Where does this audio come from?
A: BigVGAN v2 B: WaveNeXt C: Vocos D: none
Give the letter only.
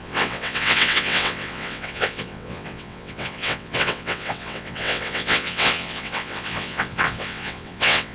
B